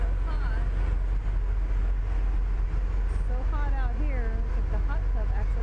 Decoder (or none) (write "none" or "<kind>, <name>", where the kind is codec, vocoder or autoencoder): none